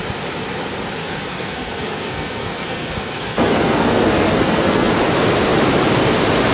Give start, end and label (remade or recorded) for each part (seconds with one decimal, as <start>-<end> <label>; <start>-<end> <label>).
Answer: 0.0-1.0 recorded; 1.0-4.9 remade; 4.9-6.5 recorded